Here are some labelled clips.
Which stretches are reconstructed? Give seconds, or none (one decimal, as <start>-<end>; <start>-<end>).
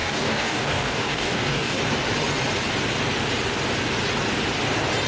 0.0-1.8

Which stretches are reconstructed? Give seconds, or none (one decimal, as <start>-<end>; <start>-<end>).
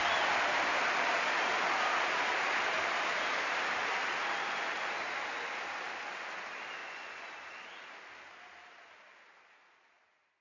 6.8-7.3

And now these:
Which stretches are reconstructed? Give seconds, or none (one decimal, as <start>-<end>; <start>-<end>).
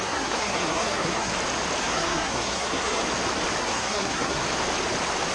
0.0-1.3; 1.8-3.0; 3.6-4.4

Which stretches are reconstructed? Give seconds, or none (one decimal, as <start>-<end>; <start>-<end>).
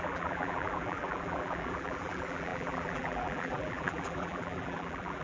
0.0-5.2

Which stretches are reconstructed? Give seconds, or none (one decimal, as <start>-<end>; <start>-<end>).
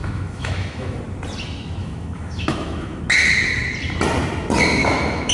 0.0-1.0; 1.8-3.0; 4.8-5.3